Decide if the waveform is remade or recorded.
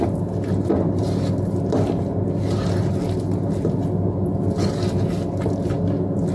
recorded